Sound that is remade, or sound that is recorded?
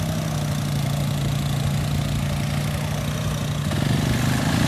recorded